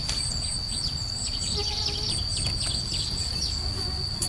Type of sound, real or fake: real